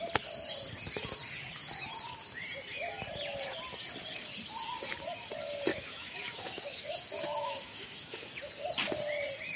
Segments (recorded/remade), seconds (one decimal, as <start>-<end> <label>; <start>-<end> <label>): 0.0-5.7 recorded; 5.7-8.5 remade; 8.5-9.6 recorded